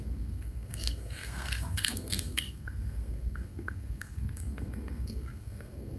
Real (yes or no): no